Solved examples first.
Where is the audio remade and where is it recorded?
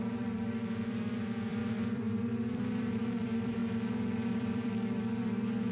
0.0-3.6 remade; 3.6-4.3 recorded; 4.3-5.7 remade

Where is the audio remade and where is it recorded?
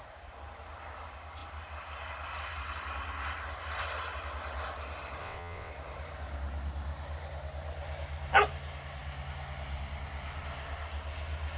0.0-5.2 recorded; 5.2-5.7 remade; 5.7-11.6 recorded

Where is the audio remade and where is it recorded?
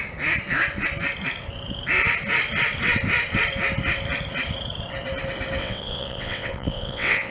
0.0-5.6 recorded; 5.6-7.3 remade